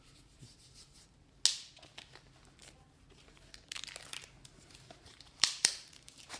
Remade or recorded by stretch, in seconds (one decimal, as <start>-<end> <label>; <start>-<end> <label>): 0.0-2.6 recorded; 2.6-6.4 remade